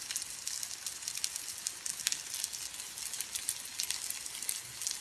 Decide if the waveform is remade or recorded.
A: recorded